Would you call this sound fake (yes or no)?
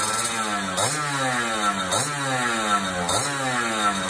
no